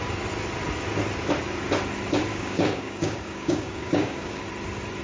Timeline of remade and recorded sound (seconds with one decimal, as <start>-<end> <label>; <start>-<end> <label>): 0.0-2.3 recorded; 2.3-4.4 remade; 4.4-5.0 recorded